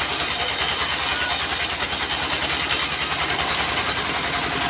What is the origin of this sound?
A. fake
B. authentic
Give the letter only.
B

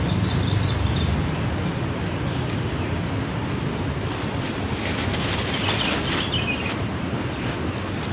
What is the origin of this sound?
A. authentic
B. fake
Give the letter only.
A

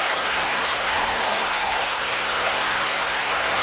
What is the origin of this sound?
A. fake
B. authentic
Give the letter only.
A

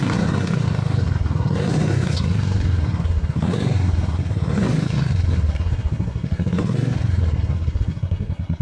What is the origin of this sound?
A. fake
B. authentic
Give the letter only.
A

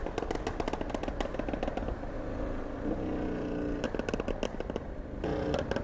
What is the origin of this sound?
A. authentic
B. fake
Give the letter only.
A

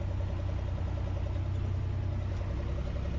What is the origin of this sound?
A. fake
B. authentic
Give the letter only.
B